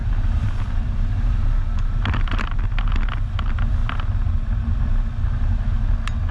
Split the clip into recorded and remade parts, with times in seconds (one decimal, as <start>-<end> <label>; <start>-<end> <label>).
0.0-2.9 remade; 2.9-6.3 recorded